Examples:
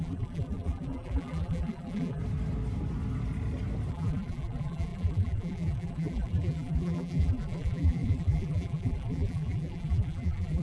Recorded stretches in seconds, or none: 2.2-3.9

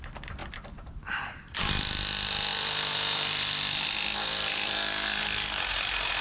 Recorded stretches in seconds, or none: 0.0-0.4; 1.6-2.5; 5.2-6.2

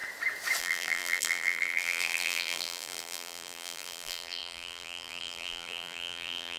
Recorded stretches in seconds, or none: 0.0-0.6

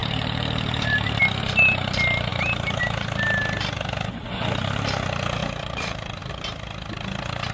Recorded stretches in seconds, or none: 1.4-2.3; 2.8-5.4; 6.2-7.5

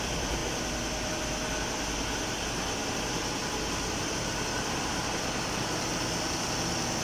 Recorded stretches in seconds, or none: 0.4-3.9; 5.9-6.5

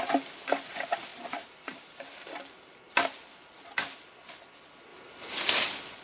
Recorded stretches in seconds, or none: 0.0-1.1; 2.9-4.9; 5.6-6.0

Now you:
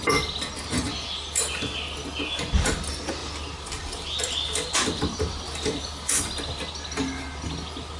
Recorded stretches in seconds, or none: 0.0-3.2; 6.6-8.0